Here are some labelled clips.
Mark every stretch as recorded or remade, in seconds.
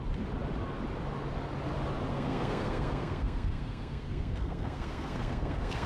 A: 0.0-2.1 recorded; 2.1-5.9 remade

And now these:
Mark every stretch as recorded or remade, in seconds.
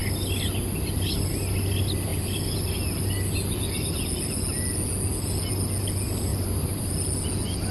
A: 0.0-6.3 recorded; 6.3-6.9 remade; 6.9-7.7 recorded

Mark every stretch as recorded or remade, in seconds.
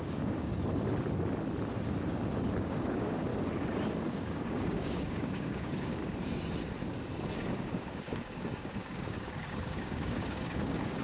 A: 0.0-0.5 remade; 0.5-2.6 recorded; 2.6-3.3 remade; 3.3-4.1 recorded; 4.1-6.0 remade; 6.0-7.6 recorded; 7.6-11.0 remade